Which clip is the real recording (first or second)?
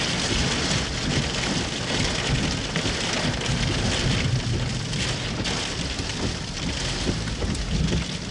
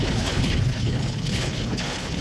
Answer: first